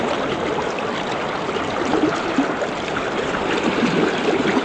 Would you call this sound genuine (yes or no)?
yes